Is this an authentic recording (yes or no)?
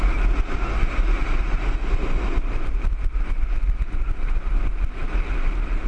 yes